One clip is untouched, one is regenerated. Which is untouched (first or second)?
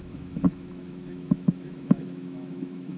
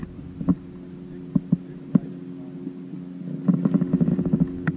second